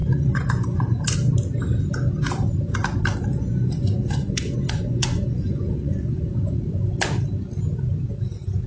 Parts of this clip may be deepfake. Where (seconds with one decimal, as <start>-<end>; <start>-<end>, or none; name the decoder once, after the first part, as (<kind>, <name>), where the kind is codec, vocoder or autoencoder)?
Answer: 0.0-1.0 (vocoder, Vocos); 3.3-6.3